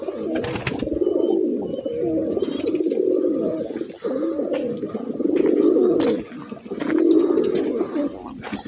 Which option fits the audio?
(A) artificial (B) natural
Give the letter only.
B